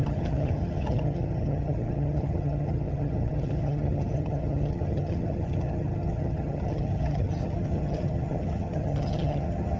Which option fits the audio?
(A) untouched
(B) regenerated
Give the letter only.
B